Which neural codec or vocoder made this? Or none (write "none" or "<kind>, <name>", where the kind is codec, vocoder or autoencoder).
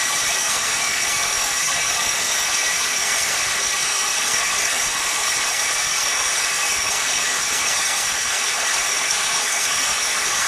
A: codec, SNAC